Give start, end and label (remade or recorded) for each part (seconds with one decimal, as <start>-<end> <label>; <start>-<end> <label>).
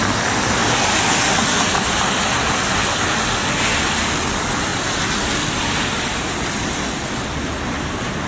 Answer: 0.0-8.3 recorded